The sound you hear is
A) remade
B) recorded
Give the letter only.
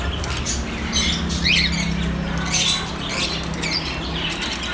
B